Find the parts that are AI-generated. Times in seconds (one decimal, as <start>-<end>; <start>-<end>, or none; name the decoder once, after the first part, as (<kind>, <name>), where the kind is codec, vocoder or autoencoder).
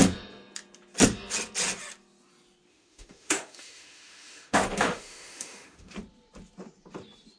2.7-5.9 (autoencoder, DAC-VAE)